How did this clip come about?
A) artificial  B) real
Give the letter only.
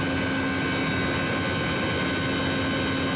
B